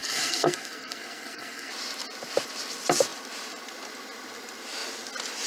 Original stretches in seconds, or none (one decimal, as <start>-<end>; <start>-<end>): 1.7-5.5